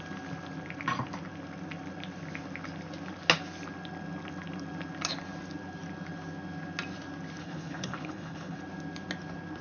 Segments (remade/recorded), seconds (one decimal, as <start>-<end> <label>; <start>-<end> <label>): 0.0-7.4 recorded; 7.4-8.6 remade; 8.6-9.6 recorded